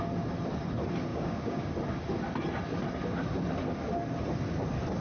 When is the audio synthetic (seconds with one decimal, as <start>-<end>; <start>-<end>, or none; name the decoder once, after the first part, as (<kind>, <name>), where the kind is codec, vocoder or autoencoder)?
1.1-1.7 (codec, DAC)